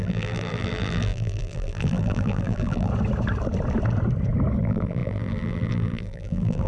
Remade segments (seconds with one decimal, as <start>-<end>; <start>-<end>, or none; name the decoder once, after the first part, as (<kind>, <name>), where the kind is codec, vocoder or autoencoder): 0.0-2.9 (vocoder, BigVGAN v2); 4.6-6.7